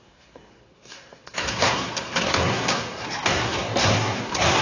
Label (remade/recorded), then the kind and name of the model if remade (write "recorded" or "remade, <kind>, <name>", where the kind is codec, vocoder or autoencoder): remade, codec, SNAC